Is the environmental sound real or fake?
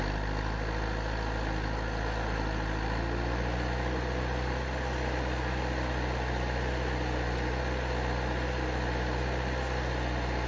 real